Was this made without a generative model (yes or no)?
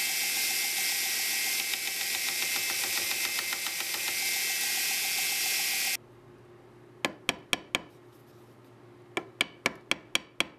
yes